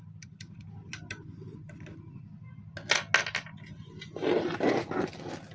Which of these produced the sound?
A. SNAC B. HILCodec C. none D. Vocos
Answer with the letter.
C